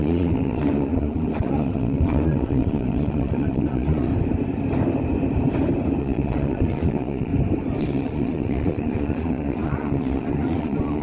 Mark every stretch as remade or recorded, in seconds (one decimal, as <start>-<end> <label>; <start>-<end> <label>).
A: 0.0-4.1 remade; 4.1-6.0 recorded; 6.0-7.3 remade; 7.3-7.8 recorded; 7.8-11.0 remade